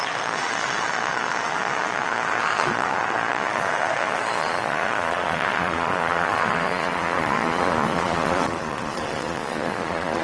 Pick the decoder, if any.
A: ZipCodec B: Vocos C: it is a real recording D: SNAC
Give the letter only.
B